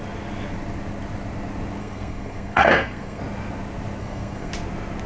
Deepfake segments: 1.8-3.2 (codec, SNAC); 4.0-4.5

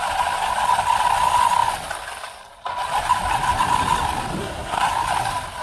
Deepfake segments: 4.4-4.9 (codec, SNAC)

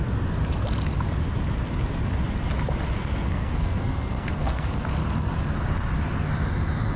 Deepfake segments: 3.0-4.9 (codec, SNAC)

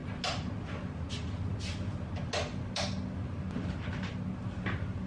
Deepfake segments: none

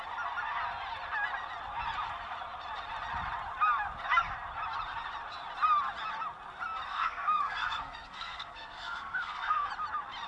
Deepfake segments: 6.9-9.7 (codec, SNAC)

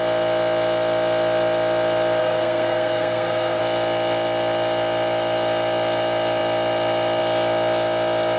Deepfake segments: 2.2-3.6 (codec, SNAC)